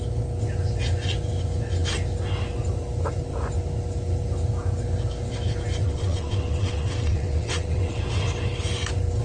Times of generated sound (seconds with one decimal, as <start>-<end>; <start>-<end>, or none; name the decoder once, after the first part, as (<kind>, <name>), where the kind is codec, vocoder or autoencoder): 5.8-8.0 (vocoder, WaveNeXt)